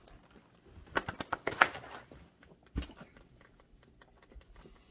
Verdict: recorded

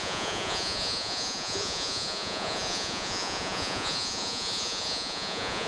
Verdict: remade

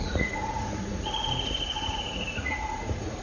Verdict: remade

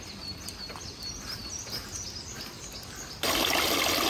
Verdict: recorded